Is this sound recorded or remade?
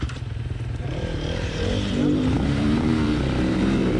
remade